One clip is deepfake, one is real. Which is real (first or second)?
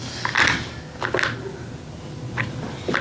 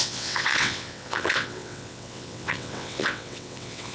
first